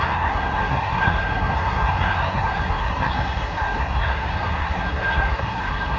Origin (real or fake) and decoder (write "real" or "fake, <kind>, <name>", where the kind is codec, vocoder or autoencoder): fake, codec, SNAC